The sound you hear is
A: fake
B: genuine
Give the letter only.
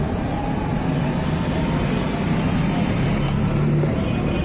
B